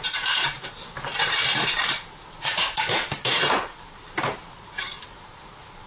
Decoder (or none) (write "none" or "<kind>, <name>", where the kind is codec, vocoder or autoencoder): vocoder, BigVGAN v2